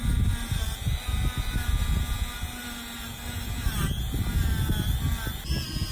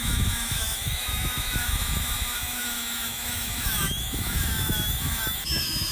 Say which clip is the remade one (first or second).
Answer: second